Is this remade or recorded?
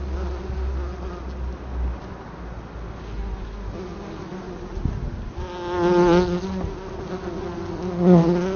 recorded